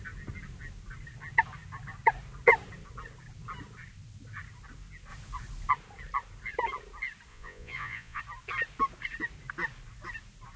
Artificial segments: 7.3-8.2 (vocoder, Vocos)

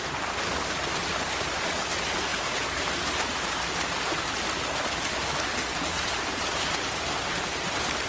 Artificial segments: 0.0-1.0 (vocoder, BigVGAN v2); 1.8-2.3; 5.3-8.1

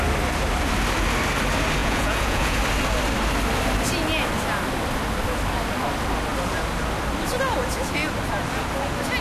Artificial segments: 1.8-2.6 (vocoder, Vocos)